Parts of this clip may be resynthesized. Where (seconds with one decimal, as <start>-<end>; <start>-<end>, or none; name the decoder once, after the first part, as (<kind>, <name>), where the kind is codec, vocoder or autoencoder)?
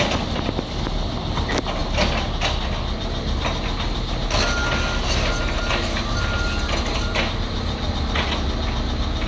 none